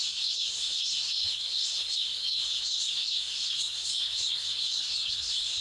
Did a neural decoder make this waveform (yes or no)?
yes